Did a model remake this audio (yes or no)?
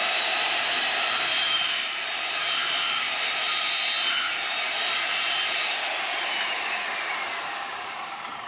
yes